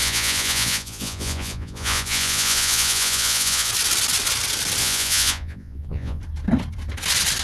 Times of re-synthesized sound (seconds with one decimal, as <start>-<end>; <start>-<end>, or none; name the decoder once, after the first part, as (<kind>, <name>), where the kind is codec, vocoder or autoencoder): 0.0-3.7 (vocoder, Vocos); 4.8-6.2